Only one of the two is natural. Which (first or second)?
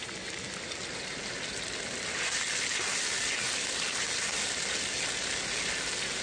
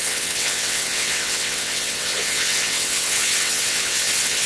first